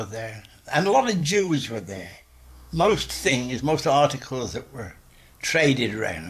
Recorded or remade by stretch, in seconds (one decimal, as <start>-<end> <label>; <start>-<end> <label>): 0.0-1.2 recorded; 1.2-3.6 remade; 3.6-6.3 recorded